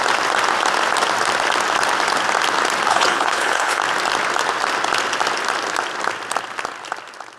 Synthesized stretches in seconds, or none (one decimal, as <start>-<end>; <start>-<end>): 2.9-3.8